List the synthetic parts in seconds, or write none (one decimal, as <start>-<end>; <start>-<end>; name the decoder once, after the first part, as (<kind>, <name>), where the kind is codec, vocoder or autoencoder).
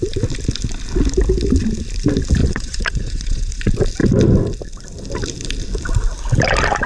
2.4-3.6 (vocoder, Vocos)